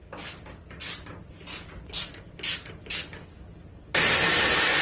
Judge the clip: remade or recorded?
recorded